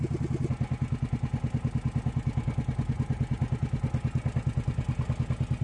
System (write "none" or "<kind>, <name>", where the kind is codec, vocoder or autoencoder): none